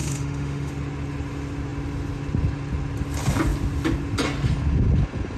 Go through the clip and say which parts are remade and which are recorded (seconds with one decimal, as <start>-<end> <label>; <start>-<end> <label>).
0.0-0.7 remade; 0.7-5.4 recorded